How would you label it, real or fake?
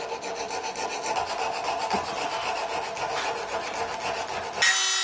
real